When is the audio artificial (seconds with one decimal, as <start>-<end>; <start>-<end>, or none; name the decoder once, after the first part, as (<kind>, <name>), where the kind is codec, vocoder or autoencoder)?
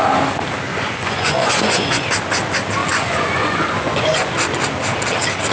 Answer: 0.7-2.0 (vocoder, Vocos); 2.8-4.3